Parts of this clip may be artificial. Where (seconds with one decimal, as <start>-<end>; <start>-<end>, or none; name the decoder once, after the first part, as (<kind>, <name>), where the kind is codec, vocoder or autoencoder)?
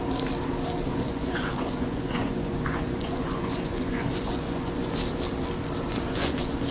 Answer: 0.9-4.9 (vocoder, Vocos); 5.9-6.7